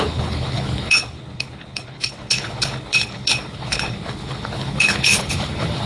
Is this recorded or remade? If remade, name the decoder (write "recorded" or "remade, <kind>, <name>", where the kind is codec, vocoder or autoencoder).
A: remade, codec, HILCodec